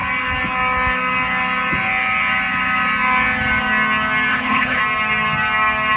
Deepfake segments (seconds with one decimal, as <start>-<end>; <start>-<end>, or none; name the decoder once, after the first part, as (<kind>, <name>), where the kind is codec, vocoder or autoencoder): 4.3-4.8 (codec, HILCodec)